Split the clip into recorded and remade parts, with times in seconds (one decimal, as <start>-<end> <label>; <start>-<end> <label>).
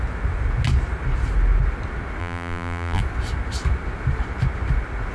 0.0-2.2 recorded; 2.2-3.0 remade; 3.0-5.1 recorded